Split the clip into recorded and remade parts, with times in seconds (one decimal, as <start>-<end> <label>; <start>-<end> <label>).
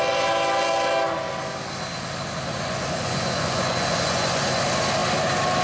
0.0-2.5 recorded; 2.5-4.6 remade; 4.6-5.6 recorded